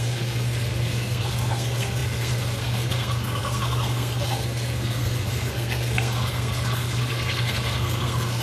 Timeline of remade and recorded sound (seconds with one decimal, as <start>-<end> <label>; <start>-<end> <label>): 0.0-8.4 remade